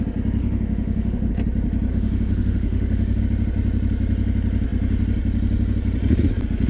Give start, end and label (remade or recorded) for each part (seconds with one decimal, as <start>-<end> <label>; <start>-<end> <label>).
0.0-0.4 recorded; 0.4-1.3 remade; 1.3-1.9 recorded; 1.9-3.2 remade; 3.2-6.7 recorded